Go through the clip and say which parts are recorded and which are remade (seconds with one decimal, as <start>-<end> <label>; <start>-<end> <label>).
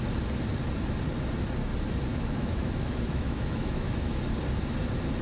0.0-2.1 recorded; 2.1-4.2 remade; 4.2-5.2 recorded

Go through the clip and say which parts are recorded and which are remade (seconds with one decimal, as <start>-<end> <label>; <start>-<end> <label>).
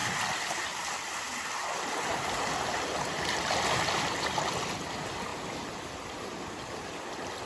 0.0-7.5 recorded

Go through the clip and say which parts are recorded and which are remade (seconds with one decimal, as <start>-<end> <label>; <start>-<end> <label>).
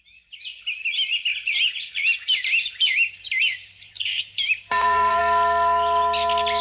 0.0-1.3 recorded; 1.3-5.2 remade; 5.2-6.6 recorded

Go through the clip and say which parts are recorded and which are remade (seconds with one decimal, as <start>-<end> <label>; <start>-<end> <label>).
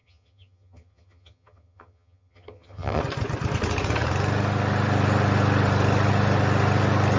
0.0-3.0 remade; 3.0-7.2 recorded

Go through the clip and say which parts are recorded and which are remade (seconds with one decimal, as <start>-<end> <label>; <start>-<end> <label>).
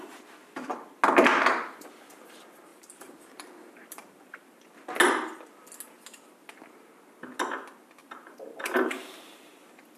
0.0-1.3 recorded; 1.3-2.2 remade; 2.2-2.7 recorded; 2.7-4.7 remade; 4.7-8.0 recorded; 8.0-9.5 remade; 9.5-10.0 recorded